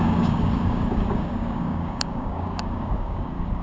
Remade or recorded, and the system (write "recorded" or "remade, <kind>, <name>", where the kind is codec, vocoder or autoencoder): remade, codec, DAC